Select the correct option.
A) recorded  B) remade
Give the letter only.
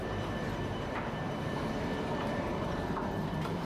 B